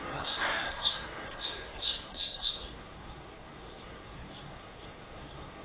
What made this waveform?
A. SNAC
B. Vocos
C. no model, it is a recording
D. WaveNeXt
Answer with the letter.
A